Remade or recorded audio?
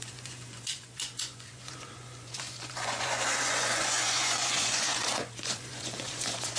remade